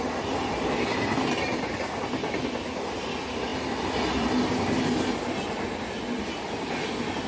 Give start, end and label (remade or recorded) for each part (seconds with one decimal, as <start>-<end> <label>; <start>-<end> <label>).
0.0-7.3 recorded